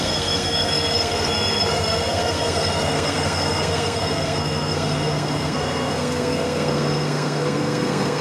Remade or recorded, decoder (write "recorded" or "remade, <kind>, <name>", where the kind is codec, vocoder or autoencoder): remade, codec, SNAC